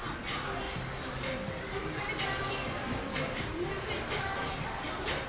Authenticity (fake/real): real